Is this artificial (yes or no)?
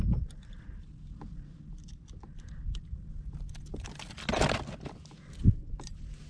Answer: no